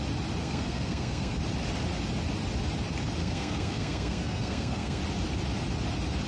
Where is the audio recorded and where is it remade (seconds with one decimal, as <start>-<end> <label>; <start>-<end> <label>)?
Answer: 0.0-0.4 recorded; 0.4-1.4 remade; 1.4-3.2 recorded; 3.2-5.0 remade; 5.0-6.3 recorded